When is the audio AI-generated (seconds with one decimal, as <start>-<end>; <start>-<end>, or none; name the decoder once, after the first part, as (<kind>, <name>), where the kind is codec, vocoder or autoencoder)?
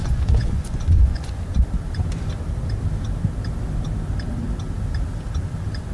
0.0-1.4 (vocoder, Vocos)